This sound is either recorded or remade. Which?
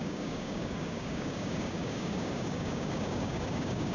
remade